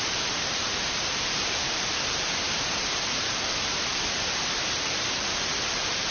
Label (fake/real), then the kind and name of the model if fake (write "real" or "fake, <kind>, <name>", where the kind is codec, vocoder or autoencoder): fake, vocoder, BigVGAN v2